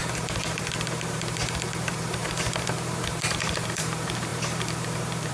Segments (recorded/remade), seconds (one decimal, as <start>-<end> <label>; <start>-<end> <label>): 0.0-5.3 remade